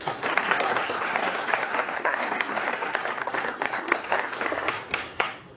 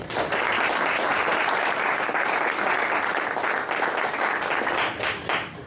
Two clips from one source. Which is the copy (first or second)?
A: first